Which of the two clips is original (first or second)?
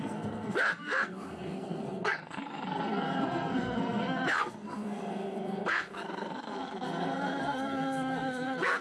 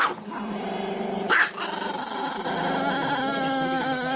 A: second